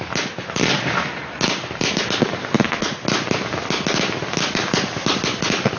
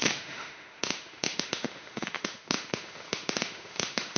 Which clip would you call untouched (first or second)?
first